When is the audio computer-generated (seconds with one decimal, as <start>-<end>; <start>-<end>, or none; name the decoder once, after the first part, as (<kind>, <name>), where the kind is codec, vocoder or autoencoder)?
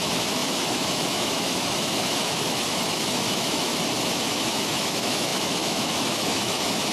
0.0-3.7 (autoencoder, DAC-VAE); 4.2-6.9